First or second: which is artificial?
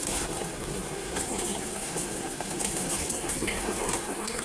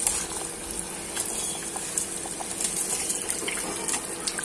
first